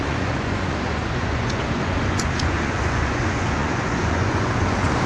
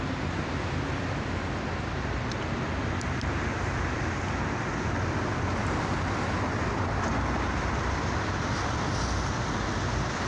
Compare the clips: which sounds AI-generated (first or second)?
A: first